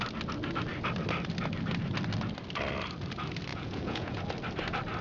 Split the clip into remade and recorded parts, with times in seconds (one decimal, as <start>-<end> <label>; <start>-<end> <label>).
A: 0.0-3.5 recorded; 3.5-4.2 remade; 4.2-5.0 recorded

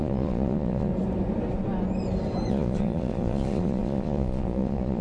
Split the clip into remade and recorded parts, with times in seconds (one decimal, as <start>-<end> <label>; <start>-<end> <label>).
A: 0.0-0.9 remade; 0.9-2.5 recorded; 2.5-5.0 remade

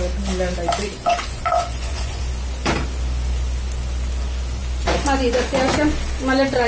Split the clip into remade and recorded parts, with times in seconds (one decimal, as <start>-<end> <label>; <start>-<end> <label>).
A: 0.0-1.0 recorded; 1.0-2.2 remade; 2.2-6.7 recorded

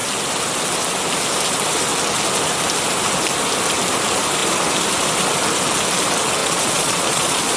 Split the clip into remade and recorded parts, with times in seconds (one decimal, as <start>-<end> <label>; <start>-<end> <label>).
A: 0.0-6.4 recorded; 6.4-7.6 remade

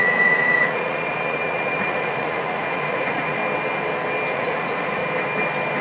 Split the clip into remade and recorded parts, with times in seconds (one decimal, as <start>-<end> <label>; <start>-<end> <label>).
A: 0.0-3.4 remade; 3.4-4.3 recorded; 4.3-5.0 remade; 5.0-5.8 recorded